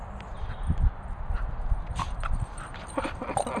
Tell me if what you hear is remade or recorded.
recorded